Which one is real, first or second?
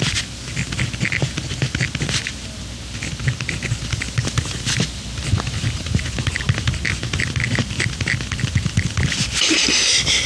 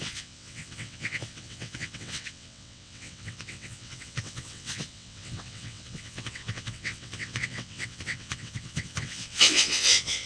first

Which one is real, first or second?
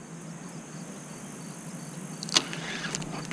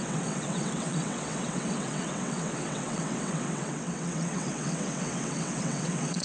first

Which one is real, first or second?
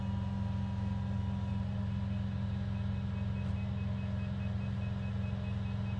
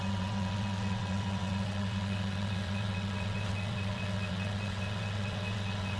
first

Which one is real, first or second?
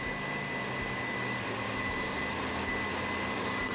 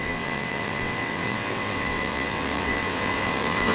first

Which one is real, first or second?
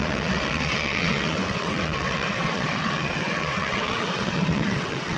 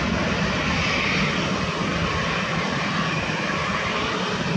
second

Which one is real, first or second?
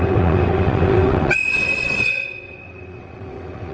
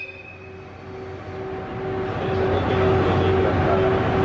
second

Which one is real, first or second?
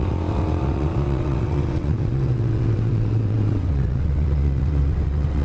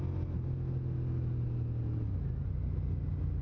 second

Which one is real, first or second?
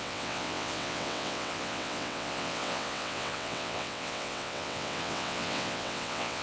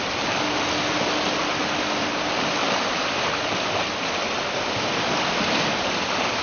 second